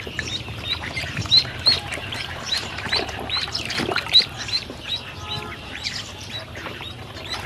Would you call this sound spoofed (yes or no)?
yes